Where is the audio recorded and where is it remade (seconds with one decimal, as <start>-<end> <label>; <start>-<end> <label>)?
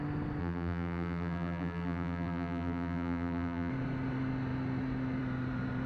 0.0-0.4 recorded; 0.4-3.7 remade; 3.7-5.9 recorded